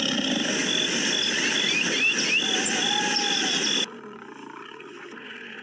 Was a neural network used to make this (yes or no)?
no